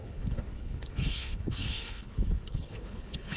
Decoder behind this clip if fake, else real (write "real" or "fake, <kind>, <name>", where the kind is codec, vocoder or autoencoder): fake, codec, HILCodec